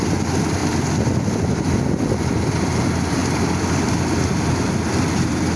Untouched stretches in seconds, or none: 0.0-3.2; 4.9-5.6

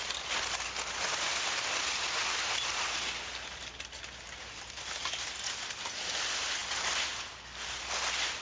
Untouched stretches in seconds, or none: 0.0-8.4

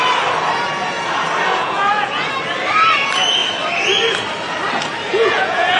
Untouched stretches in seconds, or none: 0.0-1.5; 2.3-5.1

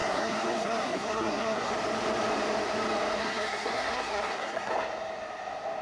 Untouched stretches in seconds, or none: 1.7-3.2; 4.7-5.8

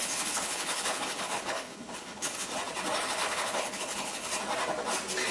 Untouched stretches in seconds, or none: 2.5-3.0; 4.3-5.3

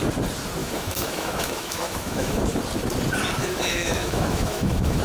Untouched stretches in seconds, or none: 0.0-0.6; 2.4-3.4